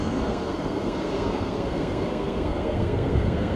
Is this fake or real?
fake